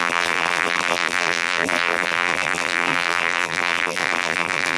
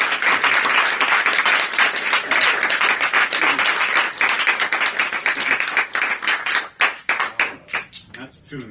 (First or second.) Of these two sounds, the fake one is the first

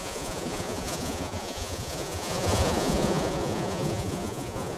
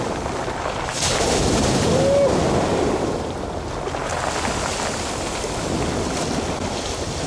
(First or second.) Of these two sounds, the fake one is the first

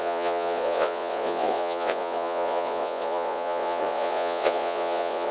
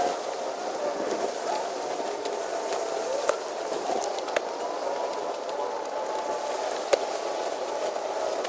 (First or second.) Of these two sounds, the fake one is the first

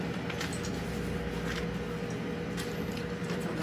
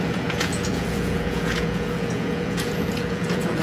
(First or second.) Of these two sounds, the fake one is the second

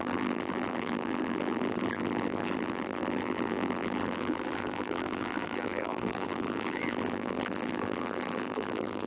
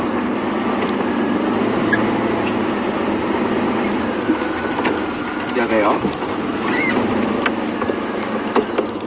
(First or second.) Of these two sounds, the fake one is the first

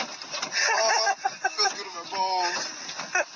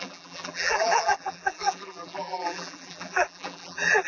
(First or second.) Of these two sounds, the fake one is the second